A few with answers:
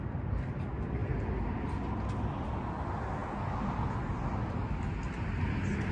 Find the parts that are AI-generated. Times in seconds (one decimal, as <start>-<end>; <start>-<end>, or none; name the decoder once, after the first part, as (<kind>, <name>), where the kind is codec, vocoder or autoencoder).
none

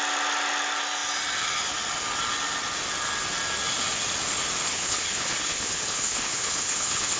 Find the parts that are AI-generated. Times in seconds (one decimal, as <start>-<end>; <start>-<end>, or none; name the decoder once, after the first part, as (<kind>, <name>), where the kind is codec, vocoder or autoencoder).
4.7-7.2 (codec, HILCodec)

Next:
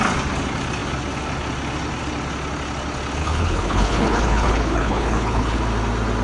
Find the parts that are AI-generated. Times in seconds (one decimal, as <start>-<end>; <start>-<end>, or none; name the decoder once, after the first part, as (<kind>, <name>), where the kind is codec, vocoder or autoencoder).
3.2-5.6 (codec, HILCodec)

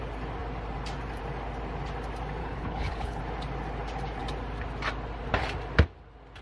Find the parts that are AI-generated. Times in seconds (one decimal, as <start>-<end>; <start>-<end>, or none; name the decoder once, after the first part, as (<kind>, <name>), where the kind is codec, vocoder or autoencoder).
2.4-3.2 (codec, HILCodec)

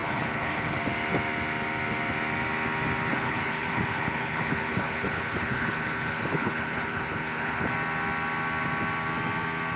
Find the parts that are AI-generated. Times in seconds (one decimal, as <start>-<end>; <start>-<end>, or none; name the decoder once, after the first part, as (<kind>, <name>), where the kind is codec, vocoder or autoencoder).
0.0-0.8 (codec, HILCodec); 3.1-7.7

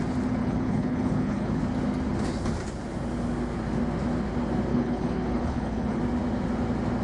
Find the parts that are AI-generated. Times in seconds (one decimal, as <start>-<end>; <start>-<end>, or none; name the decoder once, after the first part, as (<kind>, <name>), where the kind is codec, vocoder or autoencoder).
0.4-1.6 (codec, HILCodec); 4.7-6.0